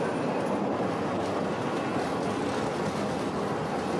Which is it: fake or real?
real